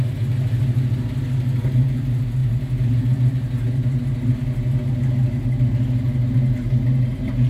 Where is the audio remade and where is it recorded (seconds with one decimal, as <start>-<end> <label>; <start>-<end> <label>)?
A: 0.0-7.5 recorded